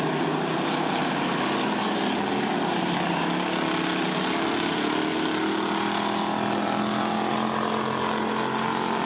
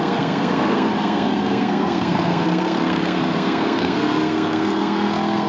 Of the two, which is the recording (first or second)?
first